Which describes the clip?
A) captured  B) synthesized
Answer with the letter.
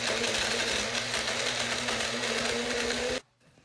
A